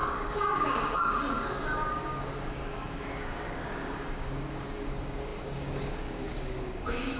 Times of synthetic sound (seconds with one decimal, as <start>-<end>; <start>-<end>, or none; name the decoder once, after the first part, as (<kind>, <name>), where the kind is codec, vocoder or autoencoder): 0.0-7.2 (codec, DAC)

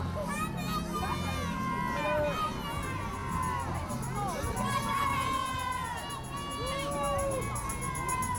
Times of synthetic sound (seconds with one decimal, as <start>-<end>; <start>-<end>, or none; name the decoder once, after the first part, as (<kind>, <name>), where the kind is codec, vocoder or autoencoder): none

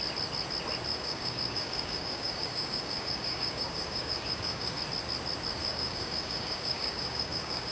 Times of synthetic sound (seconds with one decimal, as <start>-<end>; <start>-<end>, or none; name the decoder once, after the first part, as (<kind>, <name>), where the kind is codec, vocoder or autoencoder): 0.9-4.8 (codec, DAC); 5.6-7.7

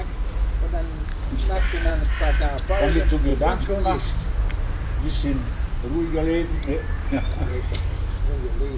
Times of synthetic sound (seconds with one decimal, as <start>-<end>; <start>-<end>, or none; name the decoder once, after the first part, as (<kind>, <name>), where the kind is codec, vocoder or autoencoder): 1.1-1.9 (codec, DAC); 7.5-8.2

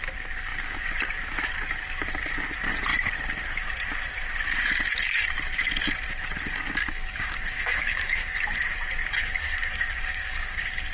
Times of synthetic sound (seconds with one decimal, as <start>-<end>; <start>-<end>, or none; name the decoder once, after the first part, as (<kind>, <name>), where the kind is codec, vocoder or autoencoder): 6.8-8.4 (codec, DAC); 9.2-10.9

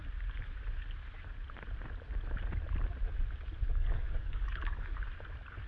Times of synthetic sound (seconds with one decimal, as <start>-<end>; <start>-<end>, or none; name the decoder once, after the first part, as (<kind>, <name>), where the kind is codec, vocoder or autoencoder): 3.7-5.0 (codec, DAC)

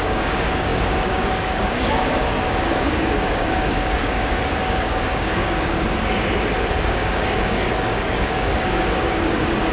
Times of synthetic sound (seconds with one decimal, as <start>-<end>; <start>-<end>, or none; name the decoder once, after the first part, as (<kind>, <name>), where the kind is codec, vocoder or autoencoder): 0.0-5.7 (codec, DAC); 6.7-9.7